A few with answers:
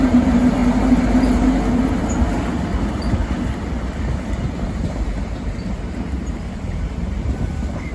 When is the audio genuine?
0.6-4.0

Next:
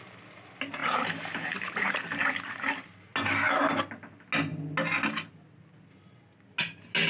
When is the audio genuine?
0.0-7.1

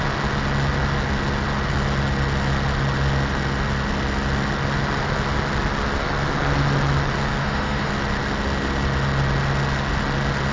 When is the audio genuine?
0.0-7.4; 7.9-10.5

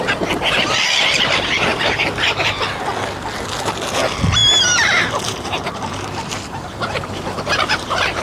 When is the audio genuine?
0.0-1.7; 2.6-4.4

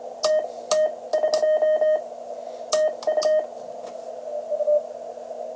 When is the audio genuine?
0.0-5.6

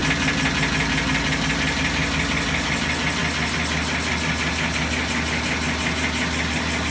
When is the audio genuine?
0.0-6.9

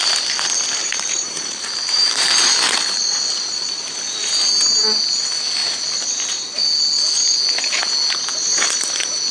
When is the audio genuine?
0.0-0.8; 3.8-9.3

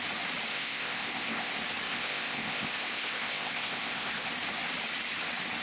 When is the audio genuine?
0.0-0.5; 1.5-1.9; 4.3-5.6